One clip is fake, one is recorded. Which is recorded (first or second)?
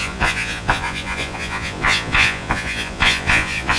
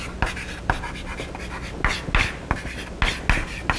second